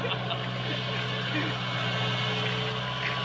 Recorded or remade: recorded